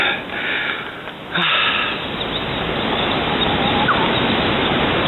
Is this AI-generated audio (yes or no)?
no